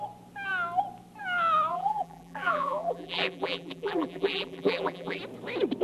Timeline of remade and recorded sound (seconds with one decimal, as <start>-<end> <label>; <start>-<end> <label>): 0.0-1.7 recorded; 1.7-5.2 remade; 5.2-5.8 recorded